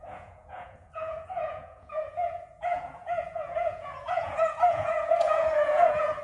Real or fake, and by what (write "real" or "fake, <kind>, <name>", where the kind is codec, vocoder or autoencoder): fake, vocoder, Vocos